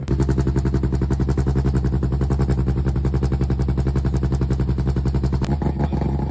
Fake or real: real